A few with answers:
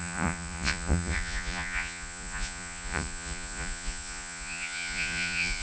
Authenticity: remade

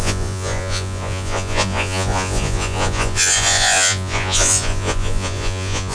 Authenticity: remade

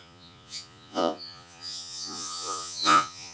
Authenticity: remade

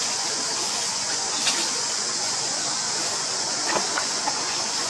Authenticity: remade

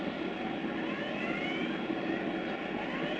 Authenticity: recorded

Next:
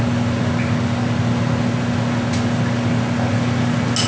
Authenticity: recorded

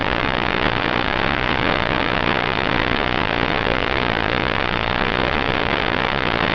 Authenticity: remade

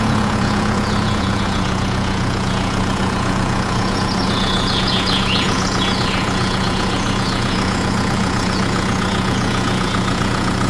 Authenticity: remade